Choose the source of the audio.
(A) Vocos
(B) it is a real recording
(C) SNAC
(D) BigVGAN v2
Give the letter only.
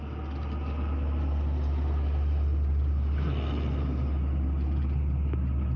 B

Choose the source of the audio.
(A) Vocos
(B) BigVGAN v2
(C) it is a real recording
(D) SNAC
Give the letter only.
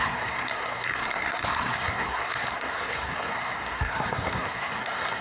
D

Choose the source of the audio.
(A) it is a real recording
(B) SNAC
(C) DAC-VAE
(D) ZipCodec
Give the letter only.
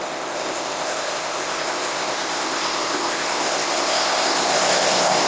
D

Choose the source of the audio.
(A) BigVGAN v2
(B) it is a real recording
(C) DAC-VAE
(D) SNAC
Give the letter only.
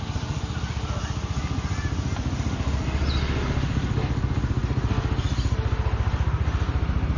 B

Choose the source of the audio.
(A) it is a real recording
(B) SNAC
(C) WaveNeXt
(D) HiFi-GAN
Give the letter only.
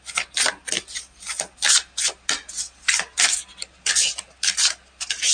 A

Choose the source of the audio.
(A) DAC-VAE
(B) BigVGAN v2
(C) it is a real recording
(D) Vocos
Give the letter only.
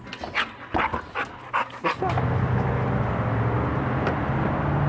C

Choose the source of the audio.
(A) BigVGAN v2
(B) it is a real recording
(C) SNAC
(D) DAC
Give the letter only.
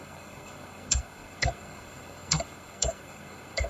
C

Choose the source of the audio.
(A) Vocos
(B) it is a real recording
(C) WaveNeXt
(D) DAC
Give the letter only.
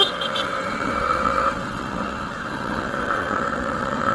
C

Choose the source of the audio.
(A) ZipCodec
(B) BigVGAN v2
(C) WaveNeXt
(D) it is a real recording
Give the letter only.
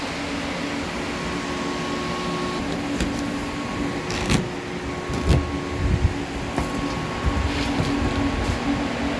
D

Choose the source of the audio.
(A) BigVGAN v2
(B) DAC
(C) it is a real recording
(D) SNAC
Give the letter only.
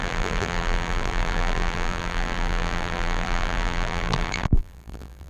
A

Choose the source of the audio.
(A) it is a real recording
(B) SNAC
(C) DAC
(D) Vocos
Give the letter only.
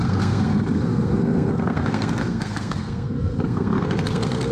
B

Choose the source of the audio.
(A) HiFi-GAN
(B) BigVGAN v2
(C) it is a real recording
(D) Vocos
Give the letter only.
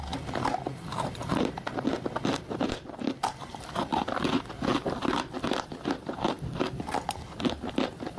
B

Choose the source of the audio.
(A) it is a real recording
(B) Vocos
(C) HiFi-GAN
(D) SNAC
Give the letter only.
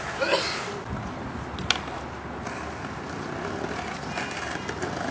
A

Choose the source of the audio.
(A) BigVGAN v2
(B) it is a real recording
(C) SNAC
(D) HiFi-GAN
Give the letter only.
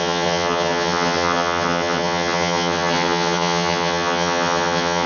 D